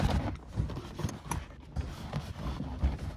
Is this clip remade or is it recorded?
recorded